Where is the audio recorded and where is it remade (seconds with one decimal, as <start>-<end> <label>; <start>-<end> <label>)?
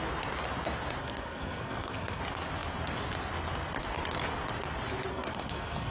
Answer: 0.0-1.0 recorded; 1.0-2.2 remade; 2.2-5.1 recorded; 5.1-5.9 remade